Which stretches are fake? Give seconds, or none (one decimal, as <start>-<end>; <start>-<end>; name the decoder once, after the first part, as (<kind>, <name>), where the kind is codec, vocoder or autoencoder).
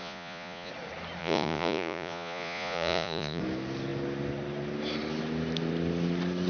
0.0-0.7 (vocoder, Vocos); 1.2-3.4